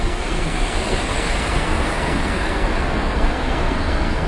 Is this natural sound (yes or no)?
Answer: no